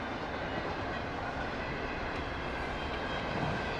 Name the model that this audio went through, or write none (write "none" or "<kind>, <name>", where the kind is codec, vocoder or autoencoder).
none